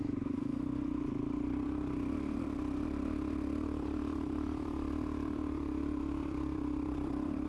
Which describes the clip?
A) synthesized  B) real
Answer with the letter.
A